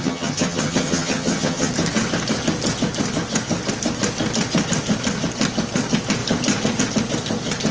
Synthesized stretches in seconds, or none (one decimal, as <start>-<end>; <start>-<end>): 0.0-1.7